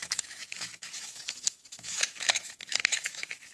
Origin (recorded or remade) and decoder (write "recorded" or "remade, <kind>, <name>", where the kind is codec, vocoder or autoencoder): remade, autoencoder, DAC-VAE